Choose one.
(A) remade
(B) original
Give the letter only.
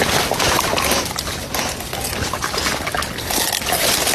B